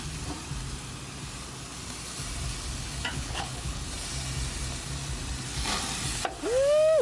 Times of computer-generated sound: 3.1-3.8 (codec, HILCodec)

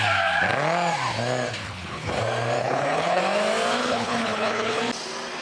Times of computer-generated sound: 1.6-2.1 (codec, HILCodec); 2.6-3.2; 3.8-4.8

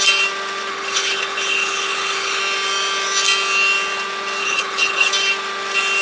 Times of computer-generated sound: 0.7-2.4 (codec, HILCodec); 4.4-5.1